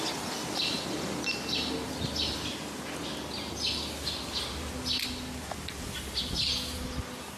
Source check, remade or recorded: recorded